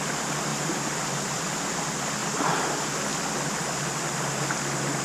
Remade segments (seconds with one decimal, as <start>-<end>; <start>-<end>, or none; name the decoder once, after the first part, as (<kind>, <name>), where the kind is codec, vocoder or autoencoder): 0.5-1.4 (vocoder, BigVGAN v2); 2.2-2.7